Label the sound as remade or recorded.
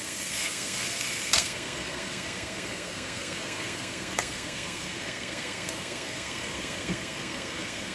remade